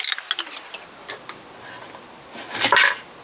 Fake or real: real